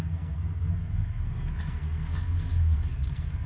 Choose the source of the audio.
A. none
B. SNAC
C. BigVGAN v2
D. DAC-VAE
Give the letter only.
B